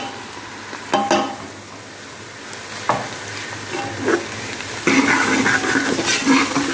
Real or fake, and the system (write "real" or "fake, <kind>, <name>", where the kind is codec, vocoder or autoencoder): real